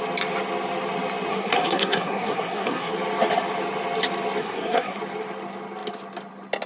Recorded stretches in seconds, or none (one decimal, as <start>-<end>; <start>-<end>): 0.0-1.3; 2.9-4.4; 5.0-6.7